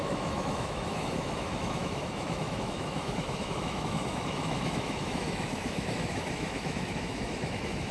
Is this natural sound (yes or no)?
no